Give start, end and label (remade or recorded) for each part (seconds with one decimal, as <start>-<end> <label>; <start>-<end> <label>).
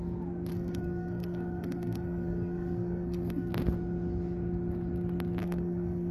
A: 0.0-0.5 recorded; 0.5-3.5 remade; 3.5-5.4 recorded; 5.4-6.1 remade